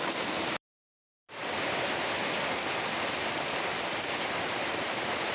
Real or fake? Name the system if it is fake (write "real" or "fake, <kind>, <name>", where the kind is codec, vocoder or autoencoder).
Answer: real